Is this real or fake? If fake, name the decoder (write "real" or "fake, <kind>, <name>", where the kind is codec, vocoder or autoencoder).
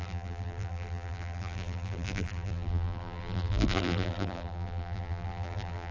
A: fake, vocoder, BigVGAN v2